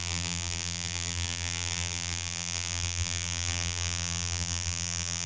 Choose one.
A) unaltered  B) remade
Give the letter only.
B